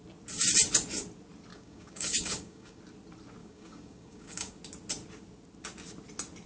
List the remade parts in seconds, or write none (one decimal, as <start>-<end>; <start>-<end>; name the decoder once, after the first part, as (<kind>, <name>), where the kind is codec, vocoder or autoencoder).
1.5-2.8 (codec, DAC); 3.4-4.6